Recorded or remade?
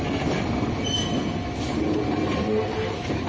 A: recorded